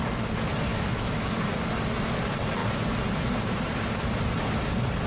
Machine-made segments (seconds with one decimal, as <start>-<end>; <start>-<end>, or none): 0.7-1.3